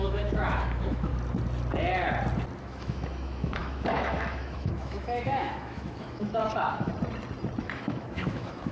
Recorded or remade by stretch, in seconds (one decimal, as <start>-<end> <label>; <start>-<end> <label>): 0.0-1.1 remade; 1.1-2.6 recorded; 2.6-6.9 remade; 6.9-7.6 recorded; 7.6-8.7 remade